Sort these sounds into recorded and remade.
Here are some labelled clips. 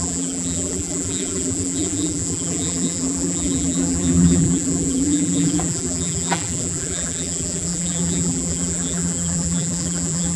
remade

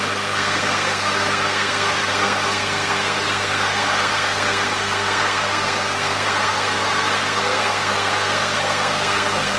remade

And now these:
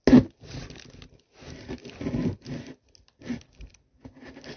recorded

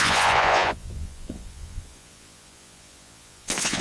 remade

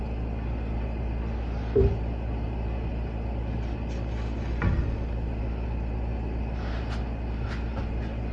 recorded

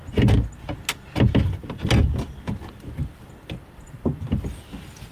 recorded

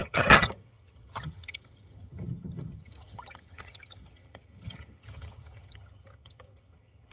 remade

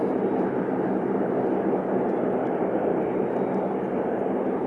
recorded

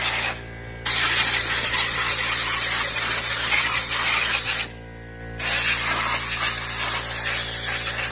recorded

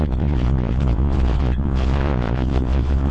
remade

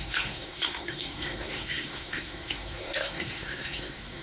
remade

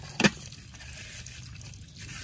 recorded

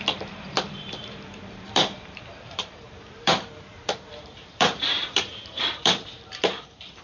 remade